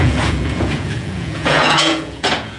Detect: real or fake fake